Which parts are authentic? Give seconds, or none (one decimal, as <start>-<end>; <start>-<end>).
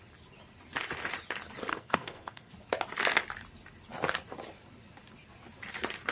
0.0-1.7; 2.5-6.1